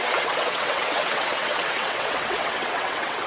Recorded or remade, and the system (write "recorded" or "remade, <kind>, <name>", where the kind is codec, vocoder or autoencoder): remade, vocoder, WaveNeXt